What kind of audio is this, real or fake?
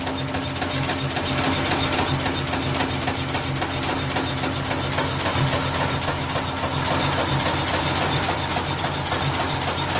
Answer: real